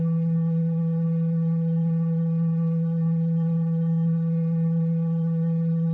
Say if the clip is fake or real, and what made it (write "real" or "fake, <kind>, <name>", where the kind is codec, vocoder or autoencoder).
fake, codec, SNAC